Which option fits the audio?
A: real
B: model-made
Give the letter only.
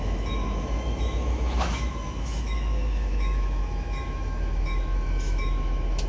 B